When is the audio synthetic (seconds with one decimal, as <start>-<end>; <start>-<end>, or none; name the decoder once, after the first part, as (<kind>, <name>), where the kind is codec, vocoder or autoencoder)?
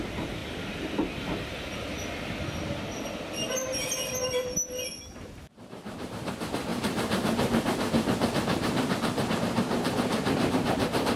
0.0-0.4 (vocoder, BigVGAN v2); 5.0-11.2